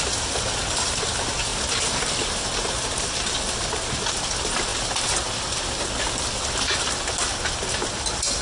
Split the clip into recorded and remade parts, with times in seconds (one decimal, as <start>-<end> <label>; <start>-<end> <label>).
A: 0.0-8.4 recorded